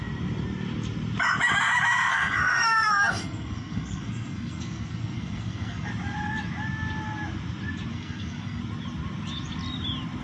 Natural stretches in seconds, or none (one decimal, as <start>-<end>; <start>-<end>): 0.0-2.1; 5.9-7.9; 8.6-10.2